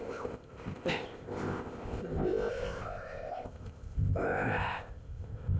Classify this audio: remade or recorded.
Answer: remade